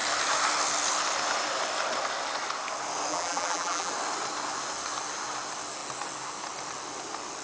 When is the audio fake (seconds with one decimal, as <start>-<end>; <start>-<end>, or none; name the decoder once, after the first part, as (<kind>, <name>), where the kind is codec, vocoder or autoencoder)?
3.1-3.9 (vocoder, BigVGAN v2)